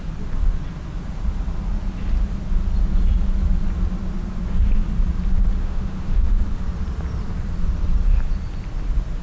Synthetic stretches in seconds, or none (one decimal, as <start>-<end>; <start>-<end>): 5.6-6.3